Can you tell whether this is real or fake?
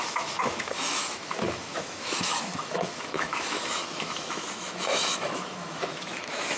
fake